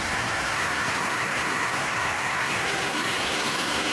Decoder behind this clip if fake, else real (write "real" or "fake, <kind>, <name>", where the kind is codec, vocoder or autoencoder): fake, codec, SNAC